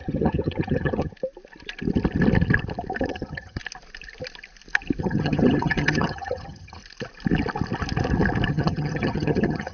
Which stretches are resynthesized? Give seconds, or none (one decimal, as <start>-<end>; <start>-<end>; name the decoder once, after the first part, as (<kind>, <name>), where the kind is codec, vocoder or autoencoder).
0.0-1.1 (vocoder, HiFi-GAN); 3.0-3.6; 5.0-6.8; 8.5-9.7